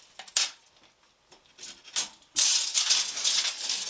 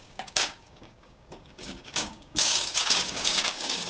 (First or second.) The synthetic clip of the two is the second